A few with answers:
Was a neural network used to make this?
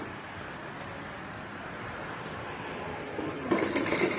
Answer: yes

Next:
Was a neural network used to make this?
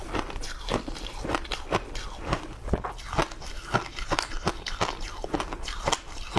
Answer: no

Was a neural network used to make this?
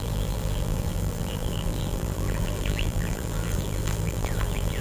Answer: yes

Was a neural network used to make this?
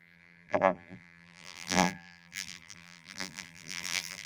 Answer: yes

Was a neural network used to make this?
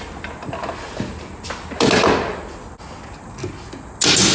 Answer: no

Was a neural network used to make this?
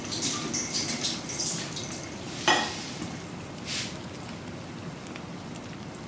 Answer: no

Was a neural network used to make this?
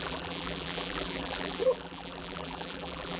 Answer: yes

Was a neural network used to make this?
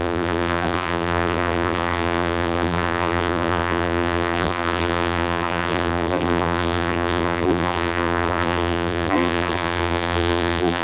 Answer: yes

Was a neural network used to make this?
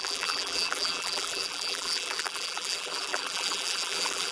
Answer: yes